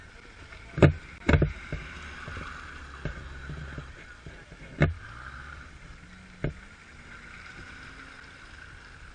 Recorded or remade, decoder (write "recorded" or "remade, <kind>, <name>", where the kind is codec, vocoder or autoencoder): recorded